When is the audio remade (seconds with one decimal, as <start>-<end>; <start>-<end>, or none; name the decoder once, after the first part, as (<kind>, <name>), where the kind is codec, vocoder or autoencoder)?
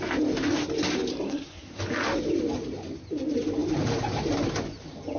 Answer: 1.1-1.8 (codec, SNAC)